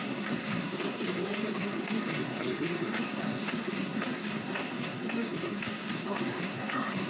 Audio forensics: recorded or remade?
remade